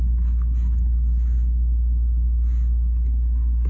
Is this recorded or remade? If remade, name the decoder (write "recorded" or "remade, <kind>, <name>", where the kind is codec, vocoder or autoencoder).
recorded